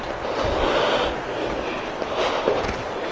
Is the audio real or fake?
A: real